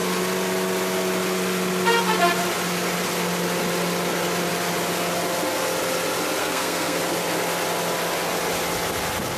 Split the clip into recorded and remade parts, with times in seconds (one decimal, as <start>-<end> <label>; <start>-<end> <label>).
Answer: 0.0-6.4 recorded; 6.4-7.0 remade; 7.0-9.4 recorded